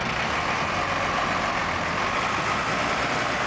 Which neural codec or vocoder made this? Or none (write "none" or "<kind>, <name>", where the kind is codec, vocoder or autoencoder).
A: none